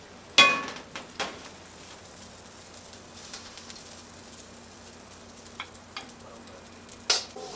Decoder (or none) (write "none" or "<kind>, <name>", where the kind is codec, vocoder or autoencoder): none